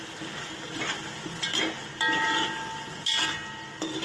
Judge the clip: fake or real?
real